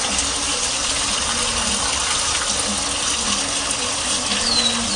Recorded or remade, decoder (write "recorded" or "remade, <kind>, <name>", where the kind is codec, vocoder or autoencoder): recorded